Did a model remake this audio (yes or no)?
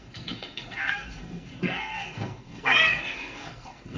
yes